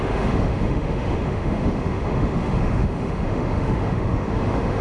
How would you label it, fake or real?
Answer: fake